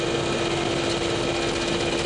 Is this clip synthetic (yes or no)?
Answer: no